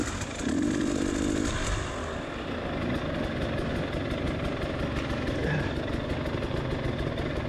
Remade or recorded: recorded